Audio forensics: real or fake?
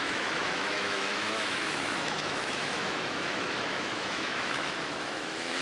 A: fake